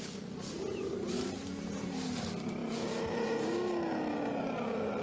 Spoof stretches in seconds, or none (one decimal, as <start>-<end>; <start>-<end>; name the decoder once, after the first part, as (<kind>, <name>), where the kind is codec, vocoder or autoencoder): none